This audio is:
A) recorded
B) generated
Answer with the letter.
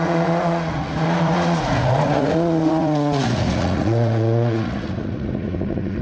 B